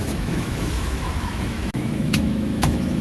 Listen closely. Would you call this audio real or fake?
fake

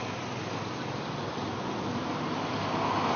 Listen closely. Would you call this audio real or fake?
real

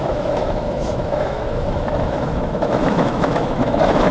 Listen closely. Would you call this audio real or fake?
fake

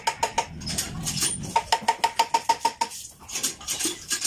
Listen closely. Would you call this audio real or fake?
real